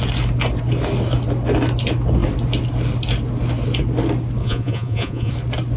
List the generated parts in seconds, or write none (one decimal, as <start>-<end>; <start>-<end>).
4.4-5.3